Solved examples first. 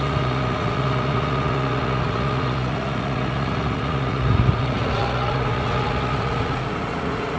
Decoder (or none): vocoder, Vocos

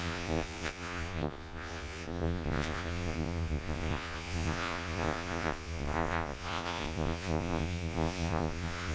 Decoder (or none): vocoder, Vocos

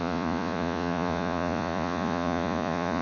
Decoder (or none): vocoder, Vocos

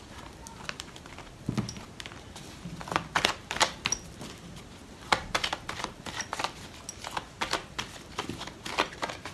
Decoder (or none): none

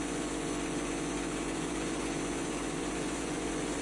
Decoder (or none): vocoder, Vocos